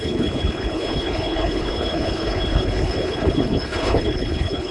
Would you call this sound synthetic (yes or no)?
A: yes